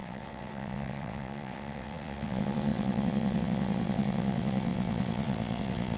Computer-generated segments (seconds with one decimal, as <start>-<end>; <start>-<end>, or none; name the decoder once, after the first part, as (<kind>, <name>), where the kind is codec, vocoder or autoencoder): 0.0-6.0 (vocoder, WaveNeXt)